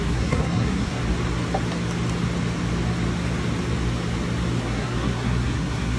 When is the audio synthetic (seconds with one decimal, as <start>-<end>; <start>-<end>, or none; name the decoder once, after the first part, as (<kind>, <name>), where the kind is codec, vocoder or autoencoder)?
0.0-1.0 (codec, SNAC); 4.6-6.0